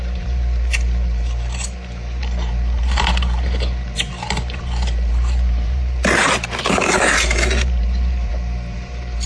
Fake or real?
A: fake